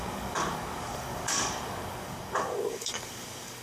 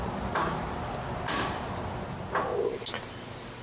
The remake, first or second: first